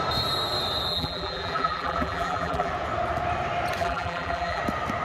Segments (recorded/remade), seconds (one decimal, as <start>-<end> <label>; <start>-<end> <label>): 0.0-0.9 recorded; 0.9-2.7 remade; 2.7-3.8 recorded; 3.8-4.6 remade; 4.6-5.0 recorded